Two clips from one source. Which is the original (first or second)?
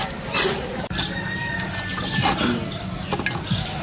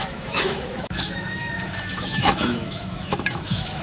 first